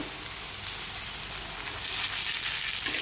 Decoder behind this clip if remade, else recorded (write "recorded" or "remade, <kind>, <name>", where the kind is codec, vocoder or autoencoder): recorded